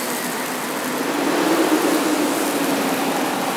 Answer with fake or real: fake